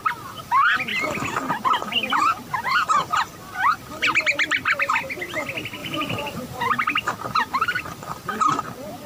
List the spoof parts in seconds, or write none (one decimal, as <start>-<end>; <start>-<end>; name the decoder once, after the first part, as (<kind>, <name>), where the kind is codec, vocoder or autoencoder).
5.8-6.7 (vocoder, BigVGAN v2)